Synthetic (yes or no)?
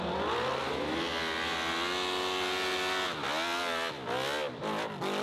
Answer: no